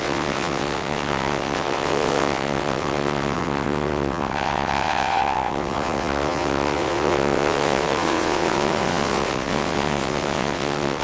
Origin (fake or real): fake